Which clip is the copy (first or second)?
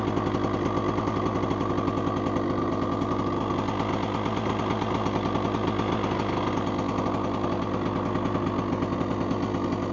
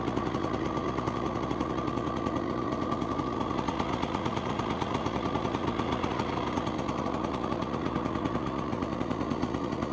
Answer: second